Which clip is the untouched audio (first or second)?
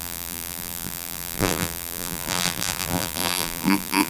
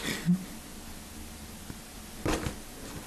second